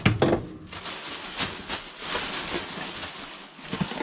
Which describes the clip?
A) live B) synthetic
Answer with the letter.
A